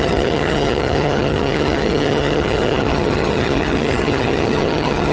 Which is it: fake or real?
fake